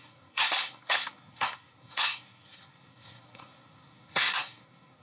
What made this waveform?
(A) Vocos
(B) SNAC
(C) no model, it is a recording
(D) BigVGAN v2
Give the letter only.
B